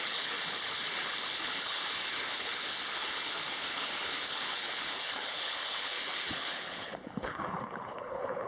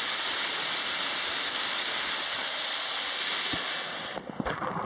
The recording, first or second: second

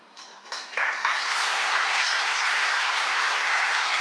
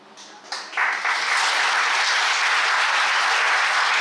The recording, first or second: second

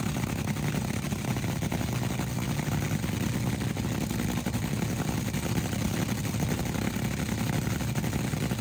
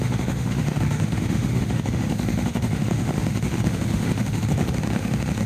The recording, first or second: first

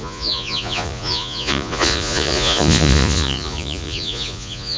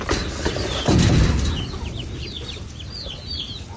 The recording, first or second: second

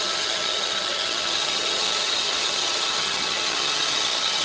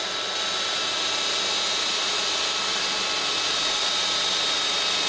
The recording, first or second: second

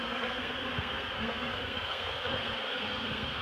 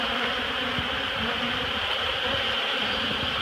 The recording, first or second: second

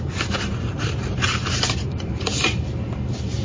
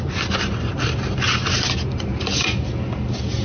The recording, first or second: second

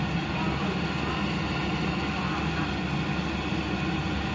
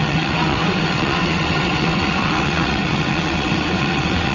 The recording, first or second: first